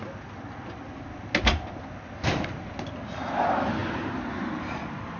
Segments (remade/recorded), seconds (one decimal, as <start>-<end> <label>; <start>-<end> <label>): 0.0-5.2 recorded